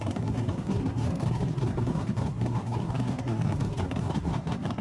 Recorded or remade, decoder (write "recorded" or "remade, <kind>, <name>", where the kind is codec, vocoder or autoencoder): remade, codec, SNAC